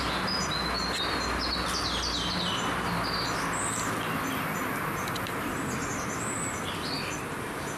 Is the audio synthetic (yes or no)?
no